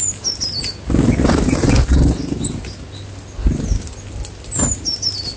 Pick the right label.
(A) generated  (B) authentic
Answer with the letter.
B